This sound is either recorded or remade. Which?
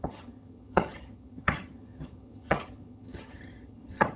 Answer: remade